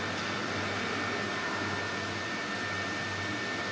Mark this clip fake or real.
real